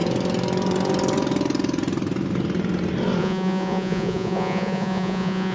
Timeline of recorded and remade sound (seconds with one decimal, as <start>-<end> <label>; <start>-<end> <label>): 0.0-3.2 recorded; 3.2-5.5 remade